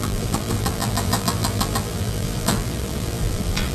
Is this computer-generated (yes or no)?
yes